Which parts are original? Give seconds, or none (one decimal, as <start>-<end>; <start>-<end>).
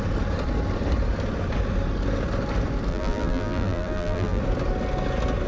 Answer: 0.0-2.9; 4.4-5.5